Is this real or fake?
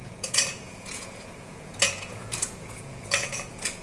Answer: fake